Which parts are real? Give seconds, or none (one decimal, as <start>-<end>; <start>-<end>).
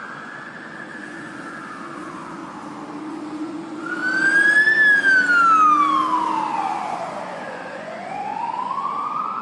2.4-3.0; 4.0-6.6